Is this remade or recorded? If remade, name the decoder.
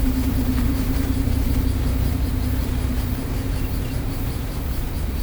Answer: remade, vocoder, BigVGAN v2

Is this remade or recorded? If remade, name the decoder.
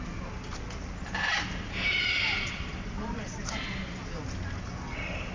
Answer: recorded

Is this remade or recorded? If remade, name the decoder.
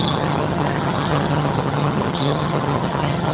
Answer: remade, vocoder, HiFi-GAN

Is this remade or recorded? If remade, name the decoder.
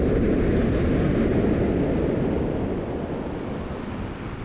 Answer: recorded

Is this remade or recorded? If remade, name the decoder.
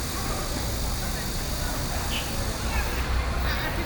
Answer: recorded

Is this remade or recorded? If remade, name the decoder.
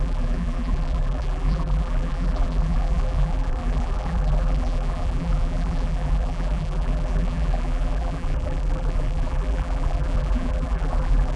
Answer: remade, vocoder, BigVGAN v2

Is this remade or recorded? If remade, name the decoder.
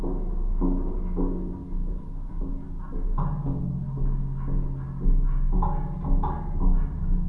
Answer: recorded